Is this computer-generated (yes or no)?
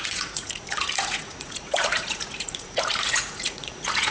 yes